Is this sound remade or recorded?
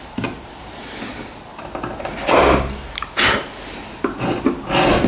recorded